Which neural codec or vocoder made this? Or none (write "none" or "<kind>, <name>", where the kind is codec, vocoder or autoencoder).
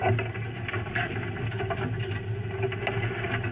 none